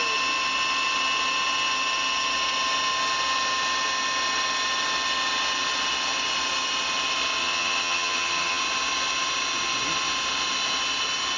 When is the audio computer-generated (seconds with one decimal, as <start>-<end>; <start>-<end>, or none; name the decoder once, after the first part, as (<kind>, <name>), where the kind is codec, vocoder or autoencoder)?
7.4-8.6 (vocoder, HiFi-GAN)